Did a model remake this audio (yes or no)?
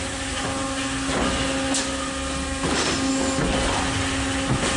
no